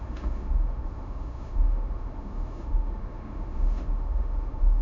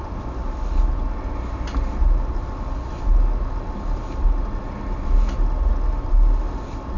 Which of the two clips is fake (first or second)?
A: first